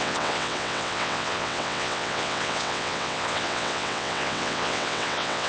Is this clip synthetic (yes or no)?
yes